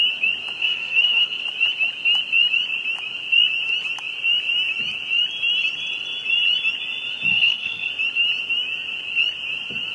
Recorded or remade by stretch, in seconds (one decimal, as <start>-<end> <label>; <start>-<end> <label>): 0.0-0.6 recorded; 0.6-1.4 remade; 1.4-7.3 recorded; 7.3-7.9 remade; 7.9-9.9 recorded